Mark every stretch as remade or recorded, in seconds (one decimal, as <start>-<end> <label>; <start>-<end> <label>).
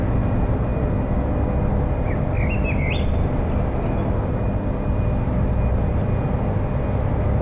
0.0-7.4 recorded